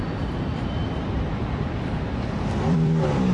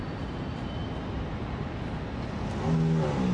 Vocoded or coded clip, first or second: first